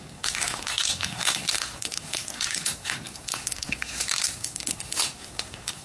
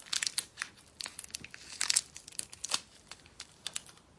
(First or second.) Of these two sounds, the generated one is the first